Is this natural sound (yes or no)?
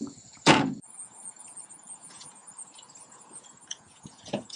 no